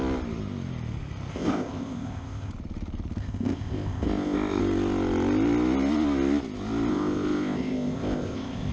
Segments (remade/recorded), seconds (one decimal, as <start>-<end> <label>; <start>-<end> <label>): 0.0-1.3 recorded; 1.3-2.5 remade; 2.5-3.2 recorded; 3.2-4.6 remade; 4.6-6.9 recorded; 6.9-8.7 remade